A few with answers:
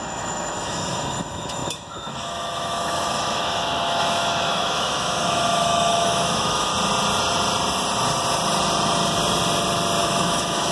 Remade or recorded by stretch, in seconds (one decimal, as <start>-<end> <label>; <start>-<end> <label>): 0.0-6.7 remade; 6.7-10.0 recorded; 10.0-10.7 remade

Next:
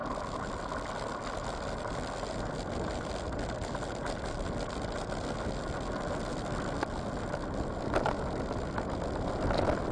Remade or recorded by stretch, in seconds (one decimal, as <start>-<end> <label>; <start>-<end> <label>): 0.0-9.9 recorded

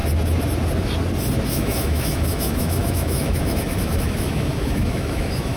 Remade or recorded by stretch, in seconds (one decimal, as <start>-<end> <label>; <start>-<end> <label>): 0.0-1.5 recorded; 1.5-5.6 remade

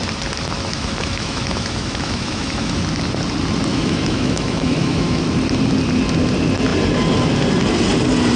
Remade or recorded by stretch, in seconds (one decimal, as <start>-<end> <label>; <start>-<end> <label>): 0.0-0.7 recorded; 0.7-2.8 remade; 2.8-3.7 recorded; 3.7-5.2 remade; 5.2-8.4 recorded

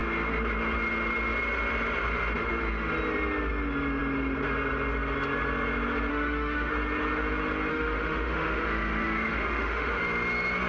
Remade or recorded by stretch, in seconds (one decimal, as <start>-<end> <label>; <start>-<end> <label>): 0.0-6.1 recorded; 6.1-6.7 remade; 6.7-7.7 recorded; 7.7-10.0 remade; 10.0-10.7 recorded

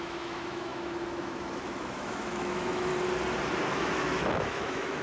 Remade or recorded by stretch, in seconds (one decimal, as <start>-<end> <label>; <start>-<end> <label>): 0.0-2.9 remade; 2.9-3.7 recorded; 3.7-5.0 remade

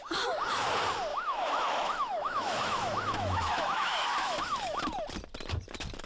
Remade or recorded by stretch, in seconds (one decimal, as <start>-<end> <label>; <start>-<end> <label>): 0.0-1.1 recorded; 1.1-4.8 remade; 4.8-6.1 recorded